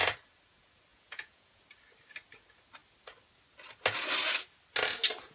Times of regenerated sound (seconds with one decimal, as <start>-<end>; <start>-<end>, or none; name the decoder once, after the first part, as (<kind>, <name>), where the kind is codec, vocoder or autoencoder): 0.9-1.6 (vocoder, Vocos)

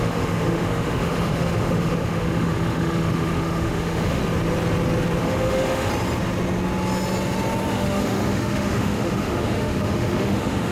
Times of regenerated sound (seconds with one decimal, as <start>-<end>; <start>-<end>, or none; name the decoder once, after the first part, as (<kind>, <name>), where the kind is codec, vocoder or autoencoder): 0.0-4.2 (autoencoder, DAC-VAE); 5.2-5.9; 7.7-10.7

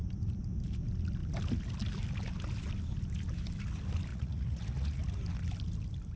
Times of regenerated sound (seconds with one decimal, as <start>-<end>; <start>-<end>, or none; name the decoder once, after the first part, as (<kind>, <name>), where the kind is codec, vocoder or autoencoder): 4.1-5.0 (vocoder, Vocos)

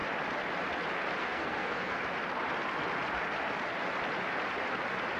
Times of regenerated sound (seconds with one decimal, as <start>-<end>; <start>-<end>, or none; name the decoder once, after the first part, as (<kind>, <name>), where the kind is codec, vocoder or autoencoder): 1.2-2.0 (codec, SNAC)